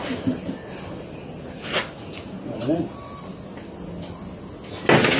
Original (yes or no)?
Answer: yes